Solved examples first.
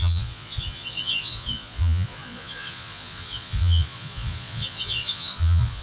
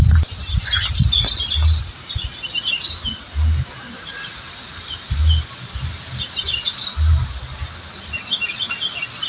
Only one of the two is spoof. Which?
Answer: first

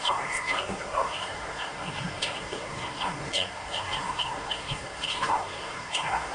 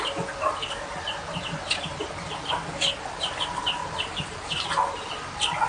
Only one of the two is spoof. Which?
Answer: first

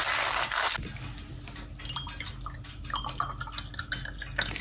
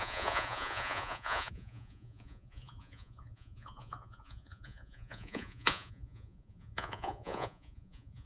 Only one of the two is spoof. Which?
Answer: second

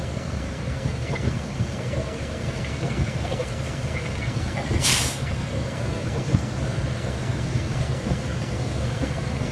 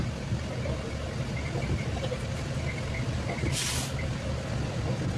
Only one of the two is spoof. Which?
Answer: first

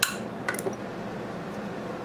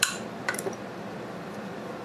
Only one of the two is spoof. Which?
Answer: second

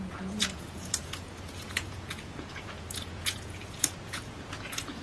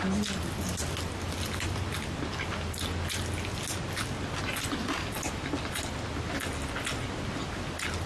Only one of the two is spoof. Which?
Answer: first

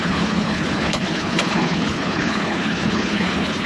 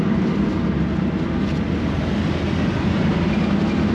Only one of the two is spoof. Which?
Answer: first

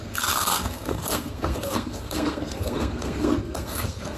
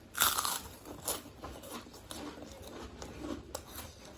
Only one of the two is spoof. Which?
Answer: first